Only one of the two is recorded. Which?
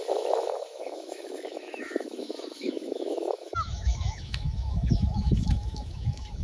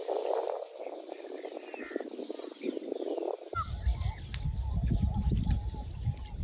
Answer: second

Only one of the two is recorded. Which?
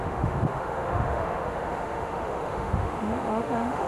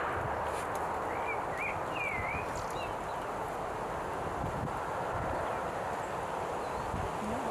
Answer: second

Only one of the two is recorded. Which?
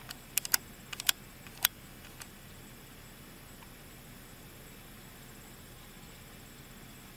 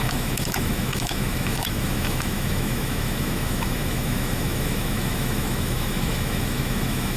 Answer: first